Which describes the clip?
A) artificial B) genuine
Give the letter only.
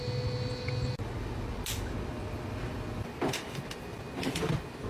B